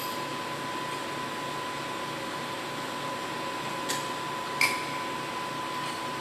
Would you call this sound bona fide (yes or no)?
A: yes